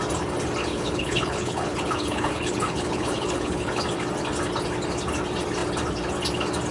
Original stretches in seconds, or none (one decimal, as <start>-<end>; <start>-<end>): 0.0-0.6; 3.8-6.7